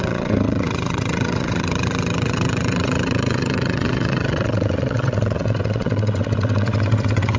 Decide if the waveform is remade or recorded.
remade